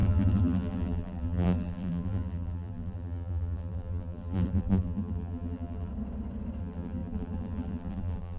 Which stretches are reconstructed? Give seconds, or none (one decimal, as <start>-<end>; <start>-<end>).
0.0-5.9; 6.6-8.4